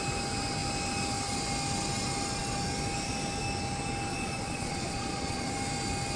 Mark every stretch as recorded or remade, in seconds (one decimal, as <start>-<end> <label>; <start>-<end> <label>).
0.0-4.1 recorded; 4.1-5.5 remade; 5.5-6.2 recorded